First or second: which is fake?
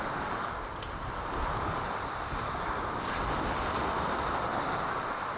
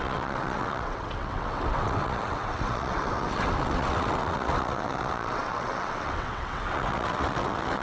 second